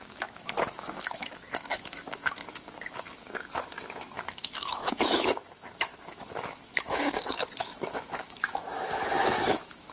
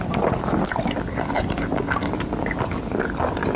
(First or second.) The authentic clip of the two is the second